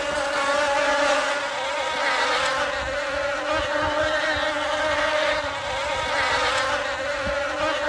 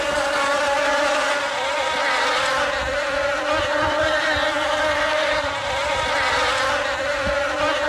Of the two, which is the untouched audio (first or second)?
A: first